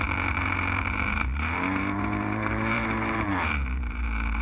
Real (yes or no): no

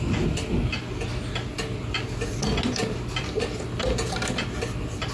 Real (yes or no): yes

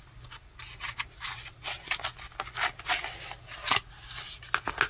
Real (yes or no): yes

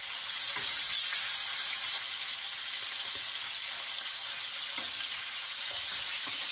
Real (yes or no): yes